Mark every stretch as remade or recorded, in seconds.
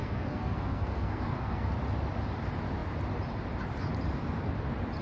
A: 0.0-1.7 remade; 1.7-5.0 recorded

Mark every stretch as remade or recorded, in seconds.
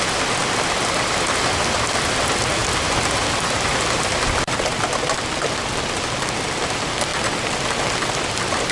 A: 0.0-8.7 recorded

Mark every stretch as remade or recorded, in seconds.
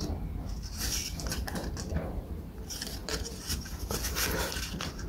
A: 0.0-3.0 recorded; 3.0-3.7 remade; 3.7-5.1 recorded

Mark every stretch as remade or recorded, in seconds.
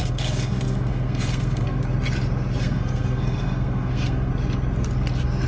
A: 0.0-1.8 remade; 1.8-2.6 recorded; 2.6-4.3 remade; 4.3-5.5 recorded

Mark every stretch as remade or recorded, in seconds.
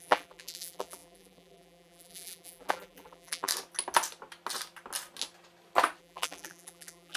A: 0.0-3.5 remade; 3.5-6.0 recorded; 6.0-7.2 remade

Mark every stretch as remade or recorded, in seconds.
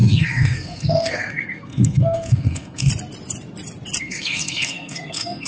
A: 0.0-2.9 remade; 2.9-4.0 recorded; 4.0-5.5 remade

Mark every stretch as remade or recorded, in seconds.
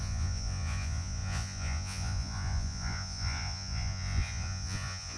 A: 0.0-5.2 remade